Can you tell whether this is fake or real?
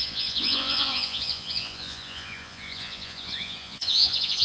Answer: fake